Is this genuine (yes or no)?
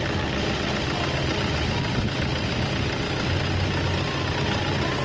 yes